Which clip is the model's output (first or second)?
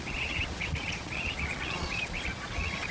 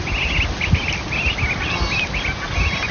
first